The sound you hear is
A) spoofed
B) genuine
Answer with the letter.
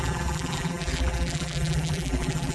A